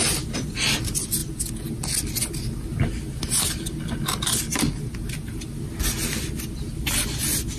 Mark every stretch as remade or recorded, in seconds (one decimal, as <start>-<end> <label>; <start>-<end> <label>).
0.0-7.6 recorded

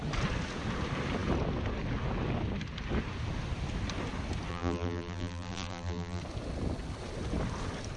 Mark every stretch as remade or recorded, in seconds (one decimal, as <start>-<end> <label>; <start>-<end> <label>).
0.0-4.5 recorded; 4.5-6.2 remade; 6.2-8.0 recorded